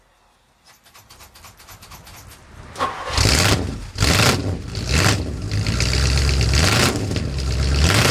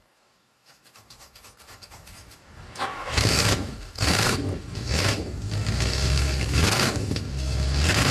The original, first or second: first